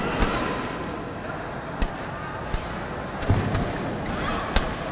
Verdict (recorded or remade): recorded